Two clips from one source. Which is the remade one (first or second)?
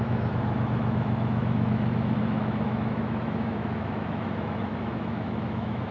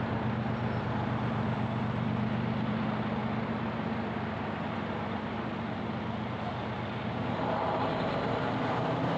first